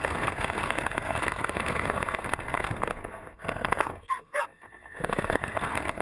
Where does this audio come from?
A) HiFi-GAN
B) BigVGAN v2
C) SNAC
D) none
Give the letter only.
C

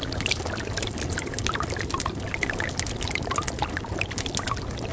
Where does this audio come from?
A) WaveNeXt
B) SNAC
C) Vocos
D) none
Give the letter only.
D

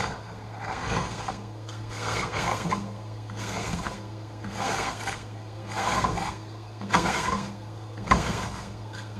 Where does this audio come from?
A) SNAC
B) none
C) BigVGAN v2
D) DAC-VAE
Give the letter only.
A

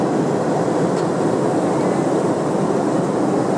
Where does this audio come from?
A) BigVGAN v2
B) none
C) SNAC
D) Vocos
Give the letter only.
B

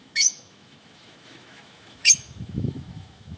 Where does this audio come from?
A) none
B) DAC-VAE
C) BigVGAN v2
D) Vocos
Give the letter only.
B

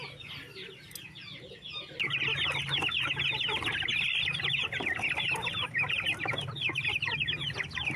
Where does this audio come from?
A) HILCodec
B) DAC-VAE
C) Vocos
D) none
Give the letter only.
D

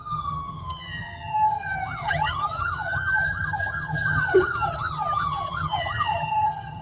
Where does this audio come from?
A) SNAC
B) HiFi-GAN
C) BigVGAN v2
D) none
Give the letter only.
B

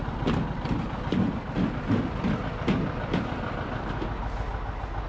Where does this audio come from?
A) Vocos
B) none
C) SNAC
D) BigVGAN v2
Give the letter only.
B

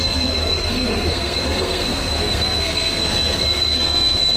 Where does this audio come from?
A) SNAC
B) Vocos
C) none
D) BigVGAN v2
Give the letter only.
A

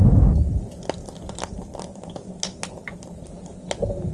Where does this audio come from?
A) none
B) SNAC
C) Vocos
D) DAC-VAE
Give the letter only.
A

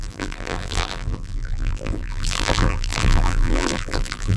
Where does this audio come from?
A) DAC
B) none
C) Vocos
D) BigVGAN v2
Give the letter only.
D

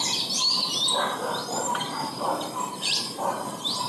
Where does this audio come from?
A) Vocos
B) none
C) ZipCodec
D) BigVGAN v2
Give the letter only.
D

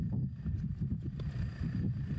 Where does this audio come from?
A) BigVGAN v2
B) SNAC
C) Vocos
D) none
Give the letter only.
A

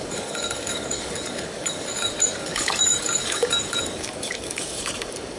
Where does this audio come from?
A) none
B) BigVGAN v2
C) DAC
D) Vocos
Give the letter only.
C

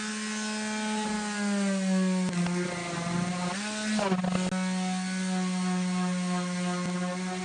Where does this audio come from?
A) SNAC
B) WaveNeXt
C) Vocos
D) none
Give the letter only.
D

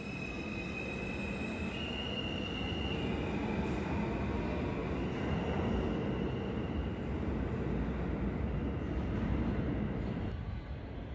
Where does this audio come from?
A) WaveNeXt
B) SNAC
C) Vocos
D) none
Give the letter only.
D